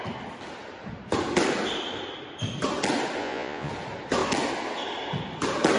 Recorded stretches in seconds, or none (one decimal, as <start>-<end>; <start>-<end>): 0.0-3.2; 3.7-5.8